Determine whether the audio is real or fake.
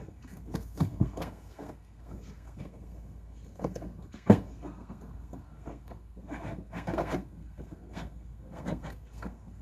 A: fake